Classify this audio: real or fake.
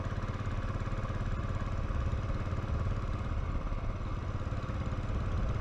real